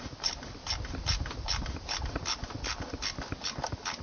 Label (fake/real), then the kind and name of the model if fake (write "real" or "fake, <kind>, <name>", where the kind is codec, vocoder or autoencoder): real